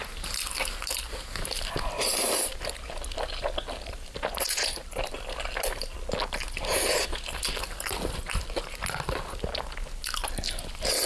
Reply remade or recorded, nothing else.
recorded